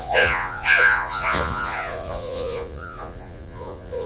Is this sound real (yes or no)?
no